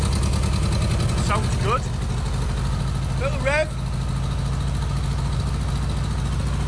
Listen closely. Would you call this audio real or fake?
real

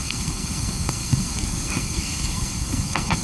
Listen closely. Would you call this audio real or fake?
fake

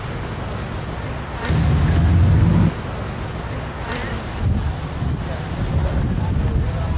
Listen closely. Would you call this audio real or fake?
real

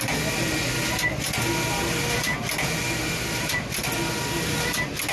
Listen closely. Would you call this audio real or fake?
real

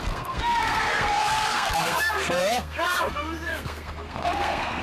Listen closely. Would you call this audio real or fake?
fake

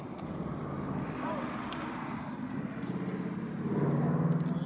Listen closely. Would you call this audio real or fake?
real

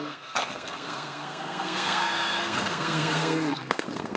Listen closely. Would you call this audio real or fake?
fake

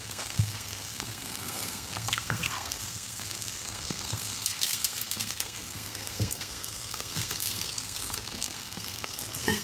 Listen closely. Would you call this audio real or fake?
fake